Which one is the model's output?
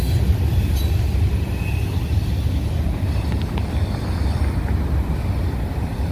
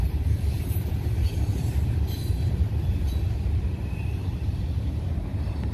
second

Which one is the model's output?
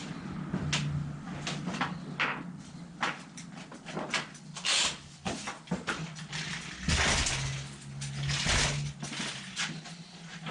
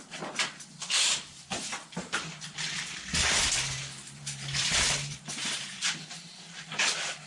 second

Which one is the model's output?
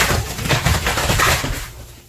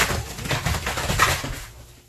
first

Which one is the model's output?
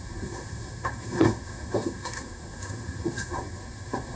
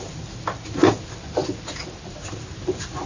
first